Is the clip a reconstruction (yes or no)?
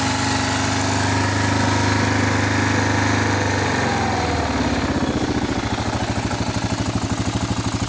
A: no